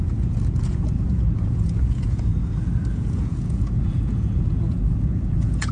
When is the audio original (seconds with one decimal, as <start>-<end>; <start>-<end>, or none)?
2.3-2.9